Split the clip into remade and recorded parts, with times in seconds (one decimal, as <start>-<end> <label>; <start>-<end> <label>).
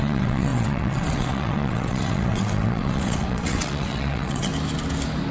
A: 0.0-4.5 remade; 4.5-5.3 recorded